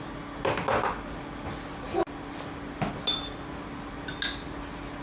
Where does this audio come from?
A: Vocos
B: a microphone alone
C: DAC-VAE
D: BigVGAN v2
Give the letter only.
B